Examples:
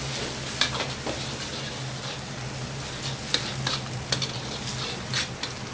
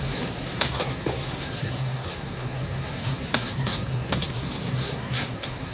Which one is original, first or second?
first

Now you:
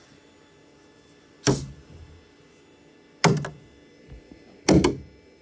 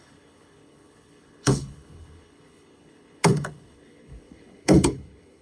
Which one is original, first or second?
first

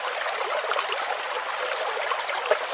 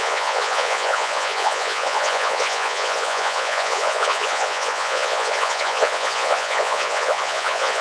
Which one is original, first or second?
first